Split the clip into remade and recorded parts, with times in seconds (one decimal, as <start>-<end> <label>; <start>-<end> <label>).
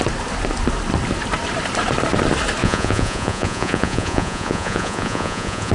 0.0-2.6 recorded; 2.6-5.7 remade